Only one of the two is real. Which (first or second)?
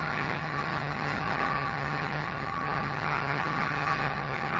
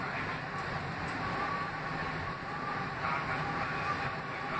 second